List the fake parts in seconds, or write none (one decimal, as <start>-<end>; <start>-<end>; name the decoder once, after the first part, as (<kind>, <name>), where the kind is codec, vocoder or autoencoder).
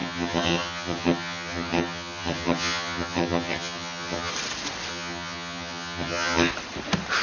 0.0-4.3 (vocoder, HiFi-GAN); 4.9-6.5